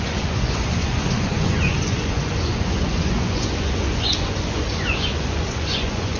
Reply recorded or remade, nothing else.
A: remade